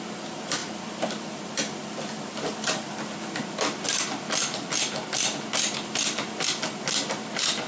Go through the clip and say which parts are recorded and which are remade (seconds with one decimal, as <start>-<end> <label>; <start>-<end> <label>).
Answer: 0.0-7.7 recorded